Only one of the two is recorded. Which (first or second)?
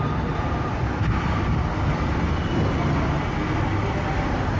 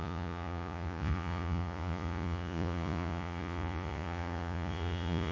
first